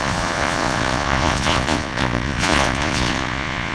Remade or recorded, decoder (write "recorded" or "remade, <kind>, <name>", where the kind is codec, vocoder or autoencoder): remade, vocoder, Vocos